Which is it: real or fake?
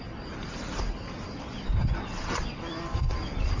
real